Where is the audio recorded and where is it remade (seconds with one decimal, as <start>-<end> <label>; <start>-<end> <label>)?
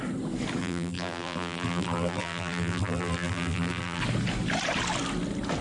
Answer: 0.0-0.6 recorded; 0.6-4.0 remade; 4.0-5.6 recorded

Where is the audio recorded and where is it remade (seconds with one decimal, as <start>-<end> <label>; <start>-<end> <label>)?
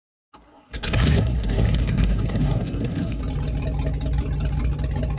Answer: 0.0-0.5 recorded; 0.5-3.2 remade; 3.2-5.2 recorded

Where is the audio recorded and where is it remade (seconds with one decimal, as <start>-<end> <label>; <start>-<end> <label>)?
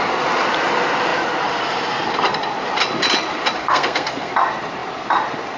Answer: 0.0-3.6 recorded; 3.6-4.3 remade; 4.3-5.6 recorded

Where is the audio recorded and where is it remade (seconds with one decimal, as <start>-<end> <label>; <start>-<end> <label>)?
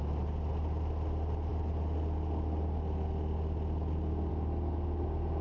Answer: 0.0-5.4 recorded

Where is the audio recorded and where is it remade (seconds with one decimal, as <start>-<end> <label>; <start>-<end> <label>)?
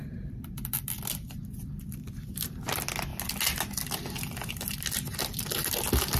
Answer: 0.0-2.4 remade; 2.4-6.2 recorded